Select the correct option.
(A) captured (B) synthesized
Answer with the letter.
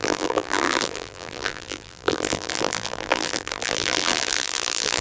B